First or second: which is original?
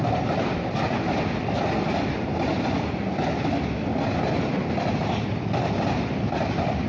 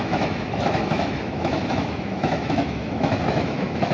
first